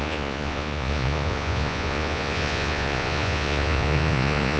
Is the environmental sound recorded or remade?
remade